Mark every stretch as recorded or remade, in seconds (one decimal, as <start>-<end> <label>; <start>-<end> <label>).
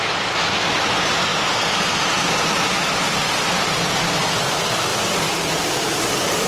0.0-1.3 recorded; 1.3-3.7 remade; 3.7-6.5 recorded